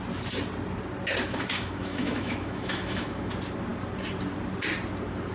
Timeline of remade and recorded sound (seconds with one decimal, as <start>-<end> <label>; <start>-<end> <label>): 0.0-1.3 recorded; 1.3-3.3 remade; 3.3-5.3 recorded